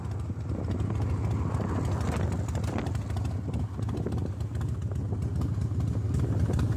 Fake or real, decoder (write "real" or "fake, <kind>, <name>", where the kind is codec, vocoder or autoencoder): real